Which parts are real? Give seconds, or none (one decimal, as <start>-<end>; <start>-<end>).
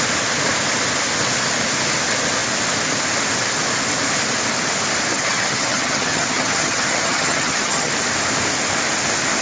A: 0.0-5.1; 7.9-9.4